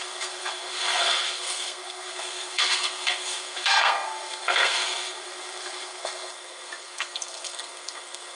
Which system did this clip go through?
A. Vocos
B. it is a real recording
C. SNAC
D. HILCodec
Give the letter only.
C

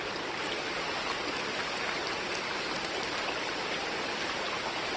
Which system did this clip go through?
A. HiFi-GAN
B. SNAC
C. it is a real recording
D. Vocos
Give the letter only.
C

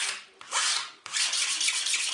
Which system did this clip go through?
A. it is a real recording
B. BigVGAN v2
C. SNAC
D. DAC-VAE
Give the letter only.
B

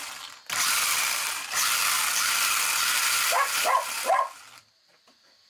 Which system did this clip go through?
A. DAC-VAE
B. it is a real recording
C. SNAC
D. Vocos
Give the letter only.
B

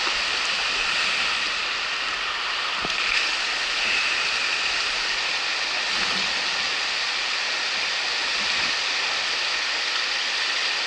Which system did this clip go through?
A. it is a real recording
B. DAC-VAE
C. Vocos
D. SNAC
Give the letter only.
A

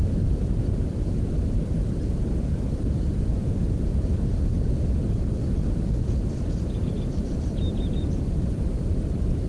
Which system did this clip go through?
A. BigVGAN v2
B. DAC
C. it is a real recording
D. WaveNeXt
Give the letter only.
C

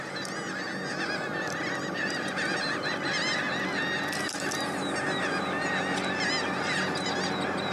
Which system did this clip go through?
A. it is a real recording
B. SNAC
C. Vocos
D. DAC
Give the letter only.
A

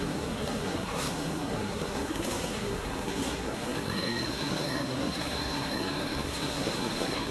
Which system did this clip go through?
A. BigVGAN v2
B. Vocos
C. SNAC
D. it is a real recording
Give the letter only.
C